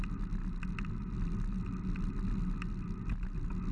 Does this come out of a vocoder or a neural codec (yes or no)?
no